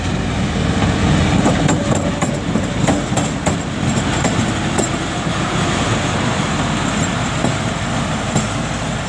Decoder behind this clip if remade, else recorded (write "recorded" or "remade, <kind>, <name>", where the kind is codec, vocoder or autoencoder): recorded